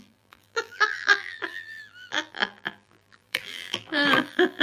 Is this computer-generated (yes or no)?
yes